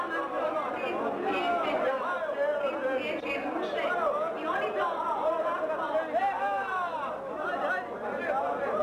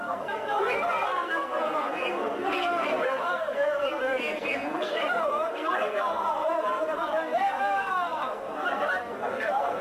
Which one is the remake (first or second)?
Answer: second